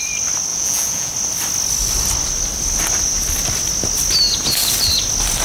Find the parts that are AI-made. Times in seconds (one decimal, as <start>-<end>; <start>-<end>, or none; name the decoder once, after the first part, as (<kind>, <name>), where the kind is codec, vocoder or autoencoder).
0.5-1.1 (vocoder, Vocos)